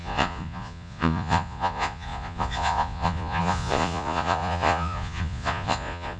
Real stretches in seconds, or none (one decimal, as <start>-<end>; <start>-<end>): none